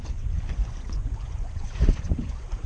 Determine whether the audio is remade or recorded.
remade